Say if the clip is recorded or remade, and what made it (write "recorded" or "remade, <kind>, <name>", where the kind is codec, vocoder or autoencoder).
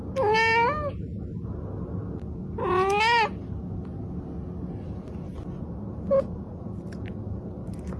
recorded